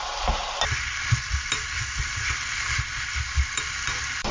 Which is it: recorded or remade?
recorded